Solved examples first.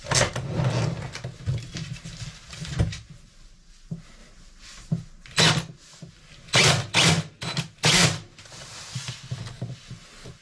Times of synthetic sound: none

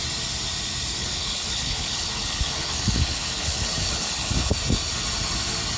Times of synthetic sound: 1.0-4.5 (codec, HILCodec)

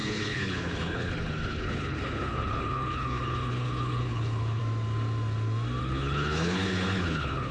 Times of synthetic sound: 0.0-4.6 (codec, HILCodec); 5.8-7.5